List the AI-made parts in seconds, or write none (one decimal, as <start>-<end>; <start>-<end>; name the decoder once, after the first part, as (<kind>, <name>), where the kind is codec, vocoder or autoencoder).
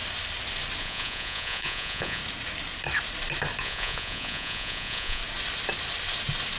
0.8-2.2 (vocoder, Vocos); 3.6-5.2